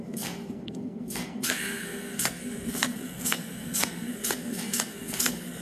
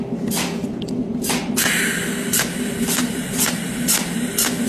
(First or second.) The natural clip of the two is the second